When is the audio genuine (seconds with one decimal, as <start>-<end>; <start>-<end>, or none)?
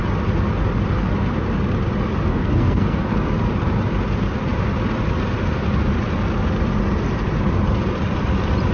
0.0-2.3; 3.3-8.7